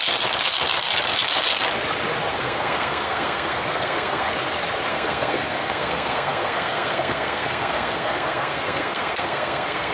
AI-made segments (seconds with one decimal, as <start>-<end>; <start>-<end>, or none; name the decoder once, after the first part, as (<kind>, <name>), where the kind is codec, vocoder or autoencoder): 2.3-4.3 (codec, SNAC); 4.9-9.9